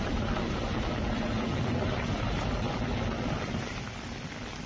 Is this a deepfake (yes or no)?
no